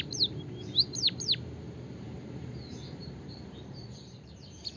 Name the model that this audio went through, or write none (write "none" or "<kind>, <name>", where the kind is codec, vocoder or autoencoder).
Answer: vocoder, BigVGAN v2